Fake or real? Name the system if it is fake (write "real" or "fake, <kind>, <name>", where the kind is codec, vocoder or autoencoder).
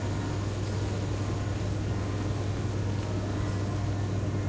real